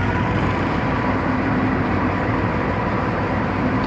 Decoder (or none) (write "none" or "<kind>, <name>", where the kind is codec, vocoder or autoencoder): vocoder, BigVGAN v2